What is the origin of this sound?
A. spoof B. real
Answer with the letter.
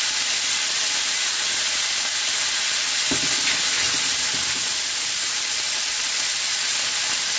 B